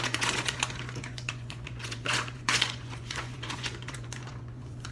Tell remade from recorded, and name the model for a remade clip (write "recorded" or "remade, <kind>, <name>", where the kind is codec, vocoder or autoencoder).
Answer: remade, vocoder, Vocos